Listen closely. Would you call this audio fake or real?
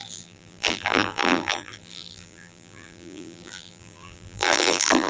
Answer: fake